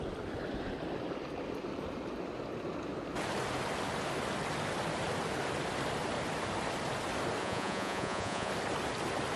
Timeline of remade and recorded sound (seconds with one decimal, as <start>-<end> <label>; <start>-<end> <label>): 0.0-7.4 recorded; 7.4-8.5 remade; 8.5-9.4 recorded